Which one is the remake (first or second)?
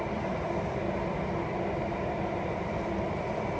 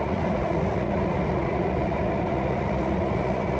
second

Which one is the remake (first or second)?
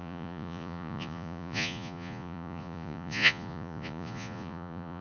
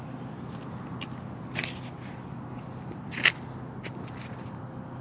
first